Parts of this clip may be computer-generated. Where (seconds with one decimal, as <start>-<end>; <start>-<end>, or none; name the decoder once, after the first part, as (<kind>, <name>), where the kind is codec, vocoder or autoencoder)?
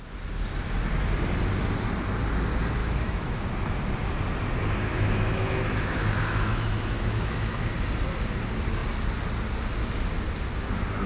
2.8-3.3 (autoencoder, DAC-VAE); 4.9-7.7